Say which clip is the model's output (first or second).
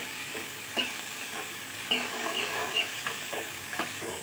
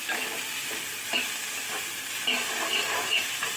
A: first